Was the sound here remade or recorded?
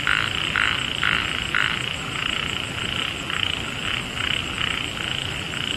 recorded